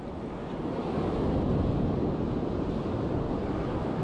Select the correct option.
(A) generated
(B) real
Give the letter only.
B